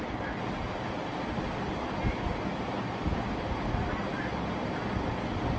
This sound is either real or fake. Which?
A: real